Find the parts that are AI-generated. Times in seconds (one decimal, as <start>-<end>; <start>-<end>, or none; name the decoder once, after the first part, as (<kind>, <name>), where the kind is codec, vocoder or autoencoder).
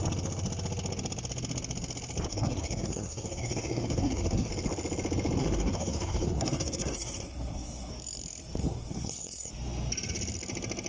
2.3-4.5 (codec, SNAC); 5.4-7.9; 8.6-9.5